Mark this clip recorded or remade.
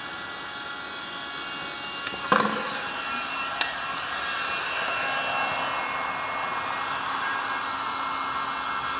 recorded